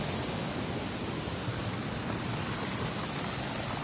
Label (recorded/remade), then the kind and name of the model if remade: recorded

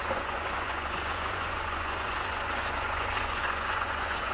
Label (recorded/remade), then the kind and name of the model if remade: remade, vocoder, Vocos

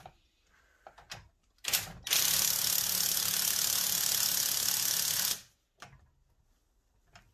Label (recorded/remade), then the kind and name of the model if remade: recorded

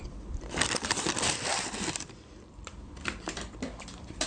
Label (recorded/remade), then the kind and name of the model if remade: remade, vocoder, BigVGAN v2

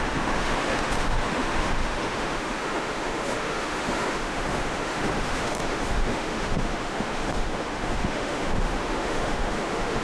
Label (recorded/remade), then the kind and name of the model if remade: remade, autoencoder, DAC-VAE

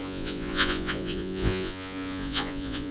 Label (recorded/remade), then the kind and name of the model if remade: remade, vocoder, Vocos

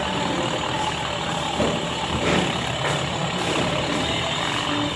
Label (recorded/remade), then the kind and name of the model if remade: recorded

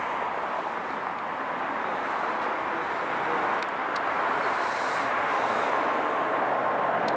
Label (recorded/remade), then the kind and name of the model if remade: recorded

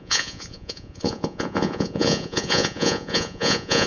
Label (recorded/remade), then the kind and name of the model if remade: remade, vocoder, Vocos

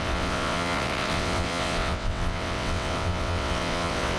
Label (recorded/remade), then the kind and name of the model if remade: remade, vocoder, WaveNeXt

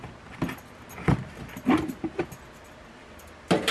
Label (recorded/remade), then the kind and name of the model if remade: recorded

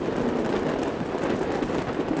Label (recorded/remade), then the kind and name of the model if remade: recorded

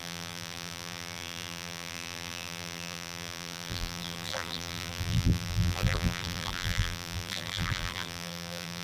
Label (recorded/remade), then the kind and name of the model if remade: remade, vocoder, BigVGAN v2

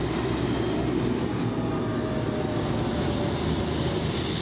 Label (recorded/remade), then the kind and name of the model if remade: recorded